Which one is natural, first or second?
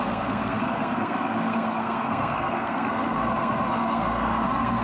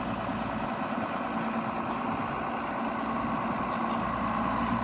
second